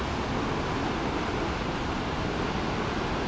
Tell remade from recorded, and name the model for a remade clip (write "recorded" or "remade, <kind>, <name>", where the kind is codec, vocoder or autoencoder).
recorded